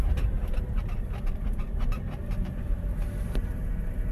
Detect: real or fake fake